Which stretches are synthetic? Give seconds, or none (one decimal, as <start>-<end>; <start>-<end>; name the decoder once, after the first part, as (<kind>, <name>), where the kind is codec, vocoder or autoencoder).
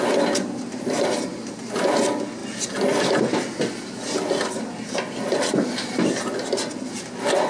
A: none